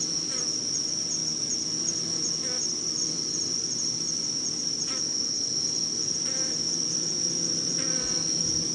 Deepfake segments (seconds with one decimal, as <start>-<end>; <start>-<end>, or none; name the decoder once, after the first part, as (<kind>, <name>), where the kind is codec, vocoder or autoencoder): none